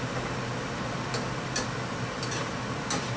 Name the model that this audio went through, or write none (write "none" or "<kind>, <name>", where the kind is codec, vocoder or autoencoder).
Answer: none